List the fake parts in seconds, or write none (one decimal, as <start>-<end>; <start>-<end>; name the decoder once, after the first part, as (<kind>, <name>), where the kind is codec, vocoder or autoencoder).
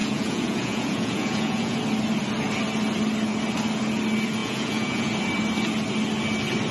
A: 0.0-1.8 (vocoder, Vocos); 4.4-5.1